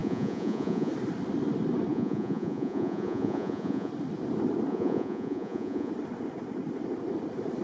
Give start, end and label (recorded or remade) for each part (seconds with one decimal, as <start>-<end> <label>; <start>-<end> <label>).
0.0-0.9 remade; 0.9-1.9 recorded; 1.9-3.9 remade; 3.9-4.7 recorded; 4.7-5.9 remade; 5.9-7.6 recorded